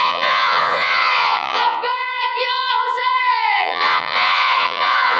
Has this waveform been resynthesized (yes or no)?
yes